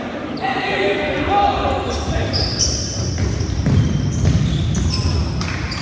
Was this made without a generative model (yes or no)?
yes